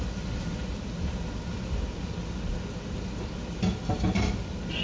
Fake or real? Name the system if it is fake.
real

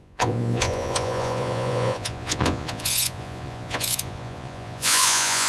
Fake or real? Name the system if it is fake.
fake, vocoder, Vocos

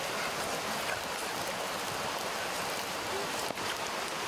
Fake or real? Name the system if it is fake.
real